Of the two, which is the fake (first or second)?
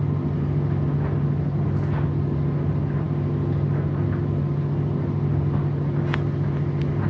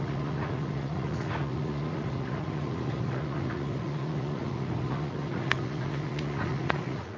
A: second